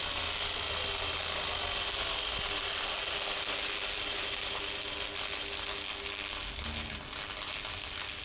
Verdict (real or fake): real